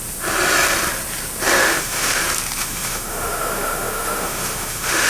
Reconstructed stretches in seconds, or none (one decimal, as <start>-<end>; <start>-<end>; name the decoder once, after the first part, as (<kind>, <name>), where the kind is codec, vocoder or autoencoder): 1.6-2.2 (autoencoder, DAC-VAE); 2.6-5.1